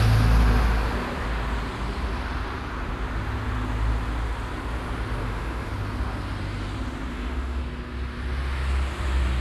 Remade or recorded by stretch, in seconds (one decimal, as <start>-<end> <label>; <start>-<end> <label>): 0.0-5.2 recorded; 5.2-5.7 remade; 5.7-7.1 recorded; 7.1-7.6 remade; 7.6-9.4 recorded